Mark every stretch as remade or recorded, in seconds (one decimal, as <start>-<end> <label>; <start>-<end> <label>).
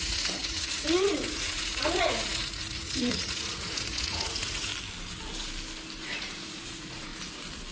0.0-4.7 remade; 4.7-6.0 recorded; 6.0-7.1 remade; 7.1-7.7 recorded